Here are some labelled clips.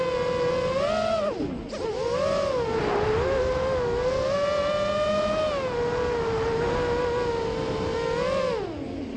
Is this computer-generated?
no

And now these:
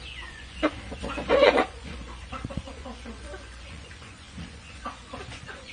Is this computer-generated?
yes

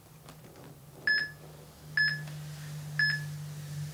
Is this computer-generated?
no